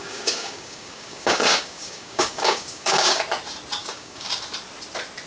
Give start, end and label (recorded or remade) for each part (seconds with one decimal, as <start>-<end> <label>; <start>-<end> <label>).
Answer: 0.0-3.2 remade; 3.2-3.8 recorded; 3.8-4.4 remade; 4.4-5.3 recorded